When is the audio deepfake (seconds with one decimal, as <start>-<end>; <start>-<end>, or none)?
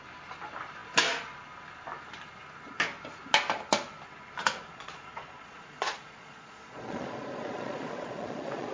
4.7-8.7